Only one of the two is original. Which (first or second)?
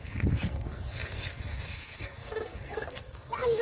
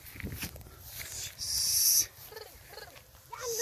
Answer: second